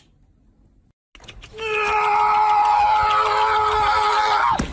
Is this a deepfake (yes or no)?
no